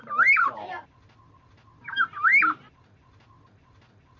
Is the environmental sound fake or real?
real